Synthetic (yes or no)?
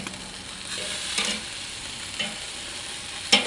no